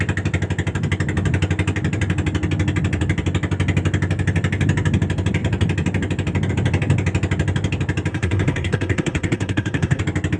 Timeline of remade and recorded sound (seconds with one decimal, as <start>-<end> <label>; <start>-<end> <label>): 0.0-8.1 recorded; 8.1-10.0 remade; 10.0-10.4 recorded